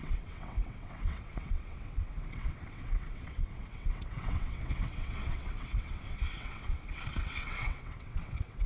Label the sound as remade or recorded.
remade